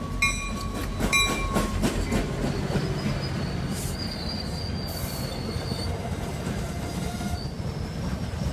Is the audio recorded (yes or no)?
yes